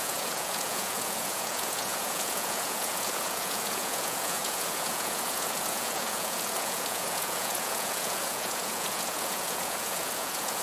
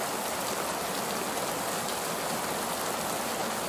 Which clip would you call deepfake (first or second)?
first